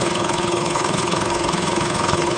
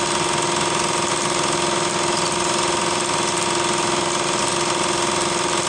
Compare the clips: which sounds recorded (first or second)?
second